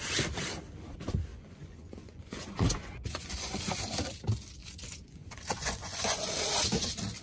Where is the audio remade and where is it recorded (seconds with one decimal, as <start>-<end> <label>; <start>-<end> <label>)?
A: 0.0-1.3 recorded; 1.3-3.6 remade; 3.6-4.6 recorded; 4.6-6.3 remade; 6.3-7.2 recorded